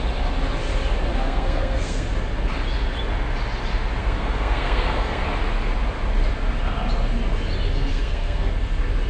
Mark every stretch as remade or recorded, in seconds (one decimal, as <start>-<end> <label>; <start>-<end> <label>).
0.0-1.1 recorded; 1.1-2.1 remade; 2.1-4.0 recorded; 4.0-5.2 remade; 5.2-7.9 recorded; 7.9-8.5 remade; 8.5-9.1 recorded